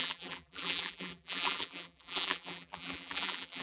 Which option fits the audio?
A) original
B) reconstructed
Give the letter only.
B